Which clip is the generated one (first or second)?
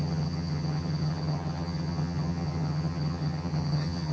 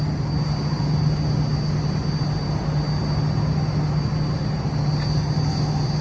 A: first